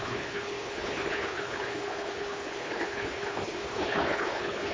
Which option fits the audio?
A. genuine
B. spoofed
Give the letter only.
B